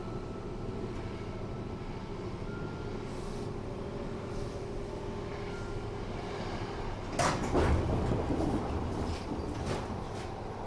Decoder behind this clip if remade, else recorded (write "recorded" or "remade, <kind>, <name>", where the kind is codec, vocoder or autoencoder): recorded